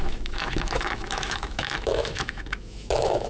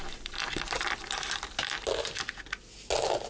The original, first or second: second